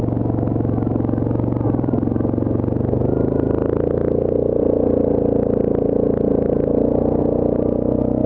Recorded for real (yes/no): yes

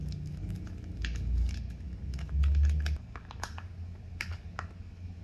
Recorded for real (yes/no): no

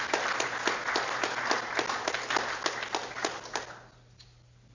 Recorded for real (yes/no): yes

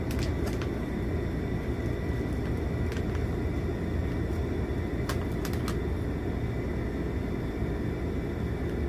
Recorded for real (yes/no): yes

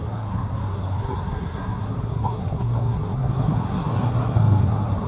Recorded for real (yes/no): no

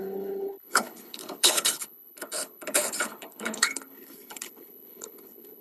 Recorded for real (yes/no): no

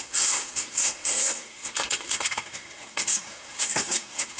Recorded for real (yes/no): no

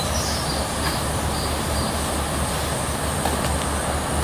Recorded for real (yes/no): yes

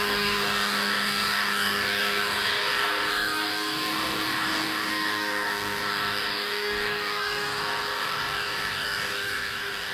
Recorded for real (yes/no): no